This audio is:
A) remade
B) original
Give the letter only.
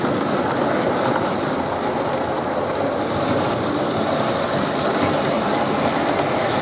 B